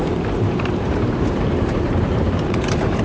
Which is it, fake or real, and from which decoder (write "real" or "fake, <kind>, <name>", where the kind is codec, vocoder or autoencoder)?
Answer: fake, vocoder, BigVGAN v2